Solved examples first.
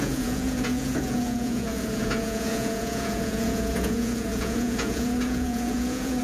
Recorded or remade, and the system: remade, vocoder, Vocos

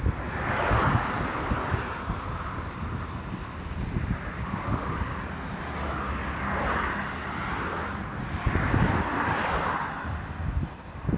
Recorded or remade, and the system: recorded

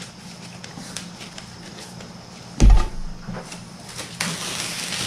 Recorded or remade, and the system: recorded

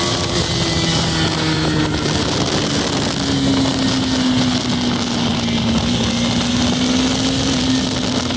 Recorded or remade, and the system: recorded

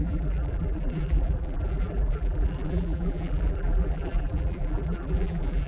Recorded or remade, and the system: remade, vocoder, BigVGAN v2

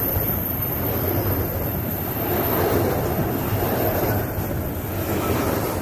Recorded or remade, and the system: recorded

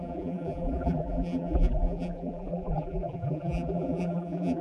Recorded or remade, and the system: remade, vocoder, BigVGAN v2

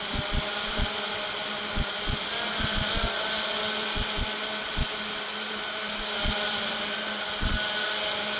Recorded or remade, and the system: recorded